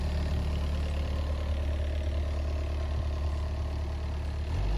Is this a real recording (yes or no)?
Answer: yes